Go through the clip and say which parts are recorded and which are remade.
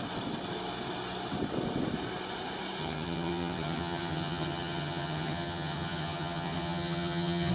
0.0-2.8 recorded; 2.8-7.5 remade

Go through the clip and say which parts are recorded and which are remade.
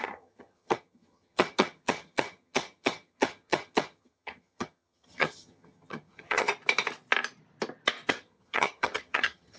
0.0-6.5 remade; 6.5-8.1 recorded; 8.1-9.6 remade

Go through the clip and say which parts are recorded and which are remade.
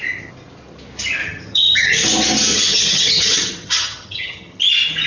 0.0-1.2 recorded; 1.2-1.9 remade; 1.9-2.5 recorded; 2.5-4.6 remade; 4.6-5.1 recorded